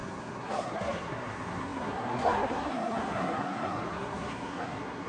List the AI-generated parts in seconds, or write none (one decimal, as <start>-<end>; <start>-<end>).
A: 0.0-5.1